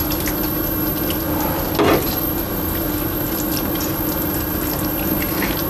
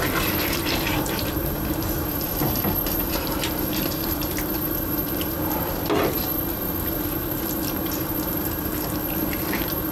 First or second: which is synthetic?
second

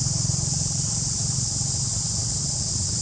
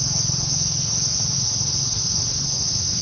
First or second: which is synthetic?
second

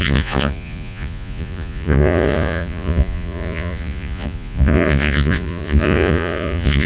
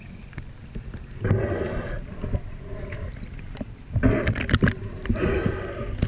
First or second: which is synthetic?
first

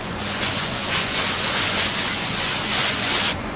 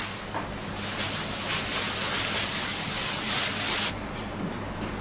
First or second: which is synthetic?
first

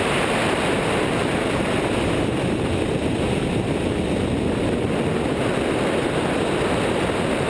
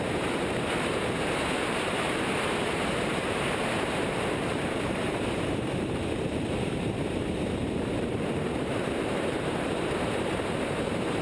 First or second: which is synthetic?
second